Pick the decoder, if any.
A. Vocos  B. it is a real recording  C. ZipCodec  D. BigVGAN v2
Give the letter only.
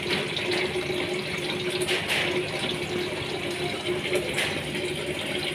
B